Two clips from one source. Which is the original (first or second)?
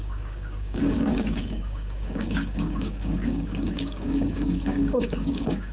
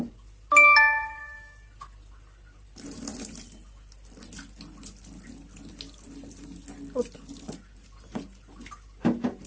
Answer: second